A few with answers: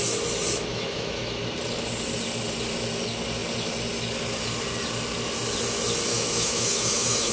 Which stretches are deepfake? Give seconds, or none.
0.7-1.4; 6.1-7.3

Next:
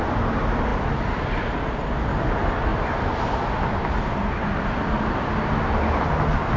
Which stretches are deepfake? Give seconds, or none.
none

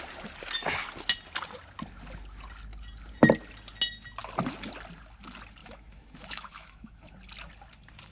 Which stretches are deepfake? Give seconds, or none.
5.6-7.1